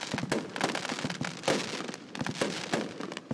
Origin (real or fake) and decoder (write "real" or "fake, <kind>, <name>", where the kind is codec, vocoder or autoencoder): real